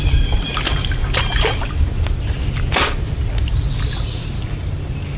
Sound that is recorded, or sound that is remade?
recorded